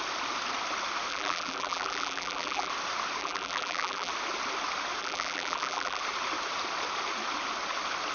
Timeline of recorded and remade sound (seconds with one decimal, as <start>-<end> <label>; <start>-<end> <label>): 0.0-1.1 recorded; 1.1-2.7 remade; 2.7-3.2 recorded; 3.2-4.1 remade; 4.1-5.0 recorded; 5.0-6.0 remade; 6.0-8.1 recorded